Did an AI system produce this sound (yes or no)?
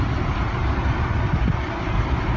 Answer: no